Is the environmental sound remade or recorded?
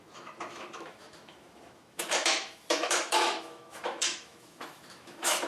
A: remade